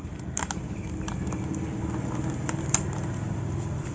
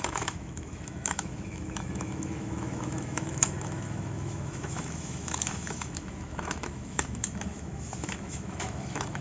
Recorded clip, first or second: first